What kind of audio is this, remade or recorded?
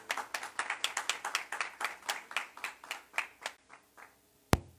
recorded